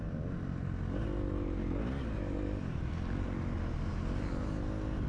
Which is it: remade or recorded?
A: recorded